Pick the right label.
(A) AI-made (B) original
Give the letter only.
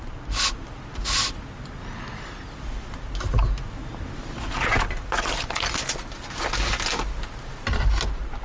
B